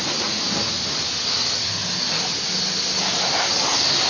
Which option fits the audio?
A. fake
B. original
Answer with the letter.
B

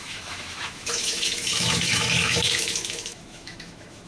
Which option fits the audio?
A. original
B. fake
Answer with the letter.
B